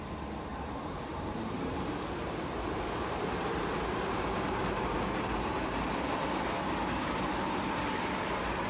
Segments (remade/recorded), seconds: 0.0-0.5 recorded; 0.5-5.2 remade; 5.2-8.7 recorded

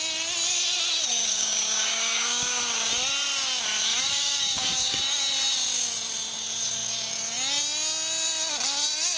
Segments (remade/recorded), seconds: 0.0-1.1 recorded; 1.1-2.9 remade; 2.9-3.9 recorded; 3.9-5.0 remade; 5.0-9.2 recorded

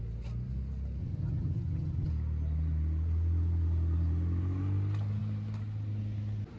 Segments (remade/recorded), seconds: 0.0-1.0 recorded; 1.0-2.1 remade; 2.1-6.6 recorded

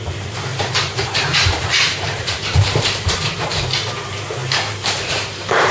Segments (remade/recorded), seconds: 0.0-5.7 remade